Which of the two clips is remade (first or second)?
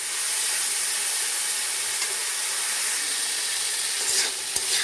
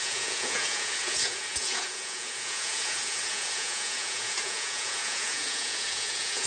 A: second